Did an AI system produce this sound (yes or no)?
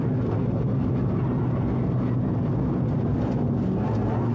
no